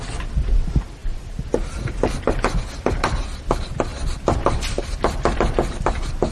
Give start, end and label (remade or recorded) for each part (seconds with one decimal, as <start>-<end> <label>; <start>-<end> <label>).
0.0-3.9 recorded; 3.9-5.2 remade; 5.2-6.3 recorded